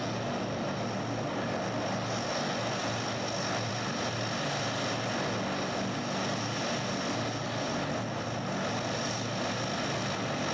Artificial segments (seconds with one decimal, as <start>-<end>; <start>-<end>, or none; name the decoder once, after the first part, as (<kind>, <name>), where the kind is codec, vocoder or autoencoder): none